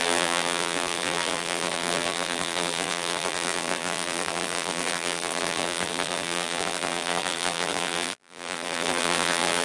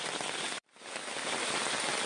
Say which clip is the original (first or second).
second